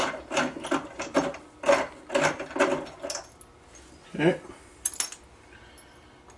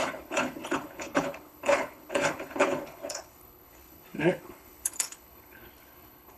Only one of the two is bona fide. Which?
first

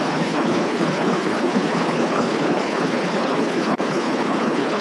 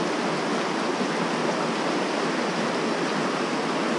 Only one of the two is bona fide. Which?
second